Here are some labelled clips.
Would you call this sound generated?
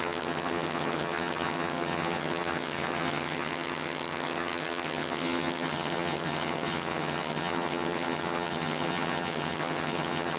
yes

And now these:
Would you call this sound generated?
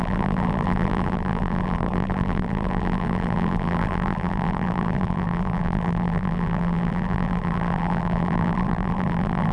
yes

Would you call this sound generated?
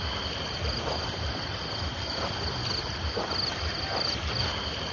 no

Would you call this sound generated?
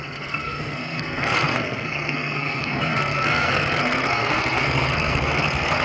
yes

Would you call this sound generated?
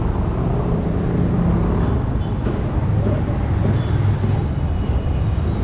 no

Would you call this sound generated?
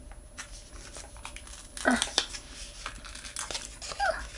no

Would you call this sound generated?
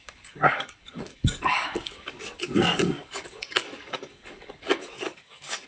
yes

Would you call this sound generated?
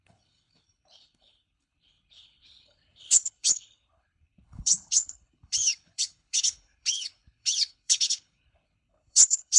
yes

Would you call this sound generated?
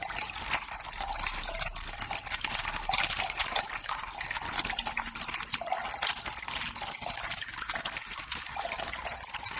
no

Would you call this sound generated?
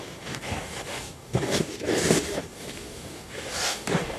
yes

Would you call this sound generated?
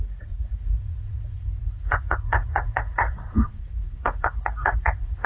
yes